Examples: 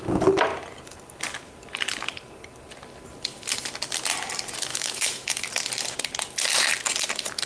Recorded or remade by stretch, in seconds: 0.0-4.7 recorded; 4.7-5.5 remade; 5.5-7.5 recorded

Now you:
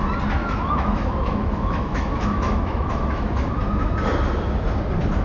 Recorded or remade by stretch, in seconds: 0.0-0.4 recorded; 0.4-3.5 remade; 3.5-5.2 recorded

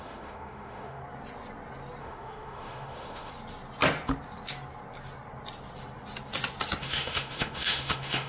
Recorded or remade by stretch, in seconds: 0.0-1.0 remade; 1.0-2.0 recorded; 2.0-3.3 remade; 3.3-6.8 recorded; 6.8-8.3 remade

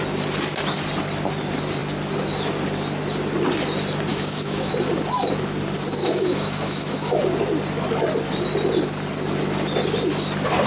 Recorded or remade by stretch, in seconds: 0.0-4.1 recorded; 4.1-4.7 remade; 4.7-6.0 recorded; 6.0-7.2 remade; 7.2-10.7 recorded

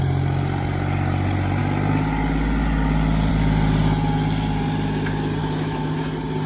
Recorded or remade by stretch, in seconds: 0.0-5.4 recorded; 5.4-6.0 remade; 6.0-6.5 recorded